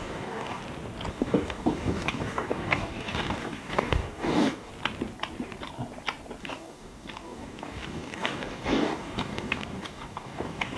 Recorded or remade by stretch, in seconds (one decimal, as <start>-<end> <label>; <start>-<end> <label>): 0.0-0.6 remade; 0.6-1.1 recorded; 1.1-4.7 remade; 4.7-6.4 recorded; 6.4-10.8 remade